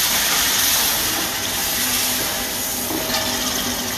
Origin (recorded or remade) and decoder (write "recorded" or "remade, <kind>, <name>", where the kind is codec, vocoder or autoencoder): recorded